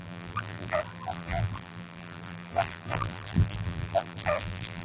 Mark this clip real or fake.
fake